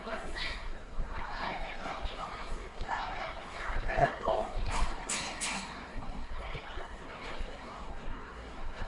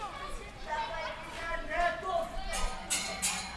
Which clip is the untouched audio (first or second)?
second